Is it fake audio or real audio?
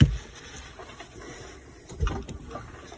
real